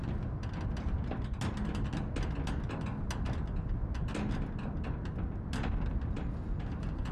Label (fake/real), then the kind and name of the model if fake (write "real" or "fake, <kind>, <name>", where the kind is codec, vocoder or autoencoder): real